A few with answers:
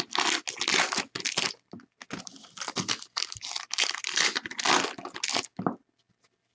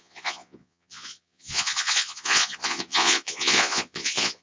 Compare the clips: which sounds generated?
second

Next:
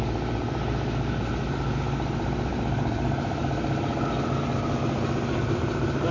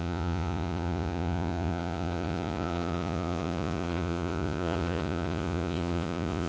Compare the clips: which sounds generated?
second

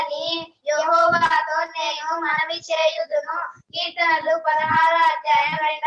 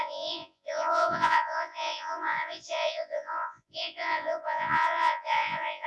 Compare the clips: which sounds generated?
second